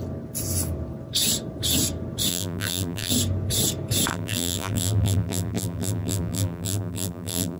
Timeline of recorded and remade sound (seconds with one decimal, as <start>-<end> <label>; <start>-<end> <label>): 0.0-2.3 recorded; 2.3-3.1 remade; 3.1-4.1 recorded; 4.1-7.6 remade